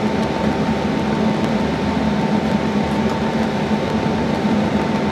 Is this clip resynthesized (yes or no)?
no